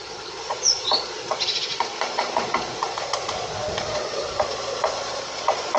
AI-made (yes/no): yes